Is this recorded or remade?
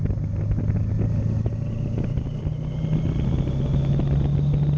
recorded